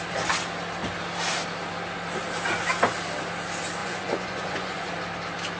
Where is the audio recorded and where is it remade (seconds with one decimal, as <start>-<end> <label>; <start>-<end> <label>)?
0.0-3.8 recorded; 3.8-4.9 remade; 4.9-5.6 recorded